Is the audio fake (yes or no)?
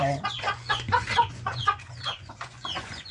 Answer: yes